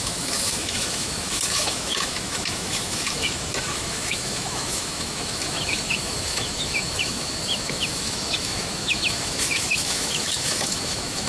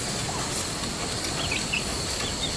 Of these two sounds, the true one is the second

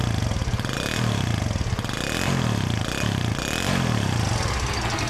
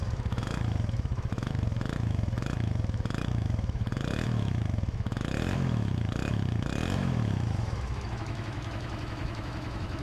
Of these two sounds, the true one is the first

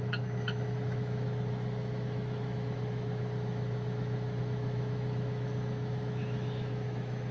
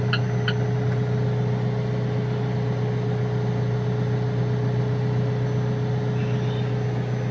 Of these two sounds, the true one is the second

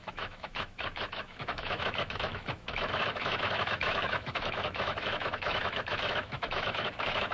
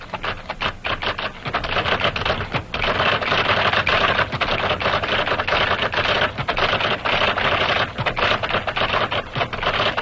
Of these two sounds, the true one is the second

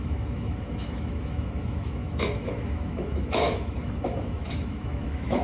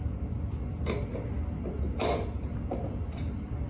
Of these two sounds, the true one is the second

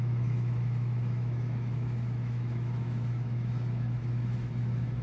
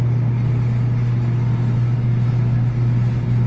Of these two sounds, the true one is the second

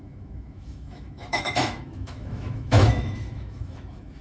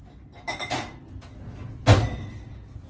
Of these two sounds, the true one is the second